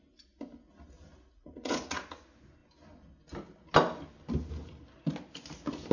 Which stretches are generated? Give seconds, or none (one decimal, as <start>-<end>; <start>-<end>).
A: 1.3-2.0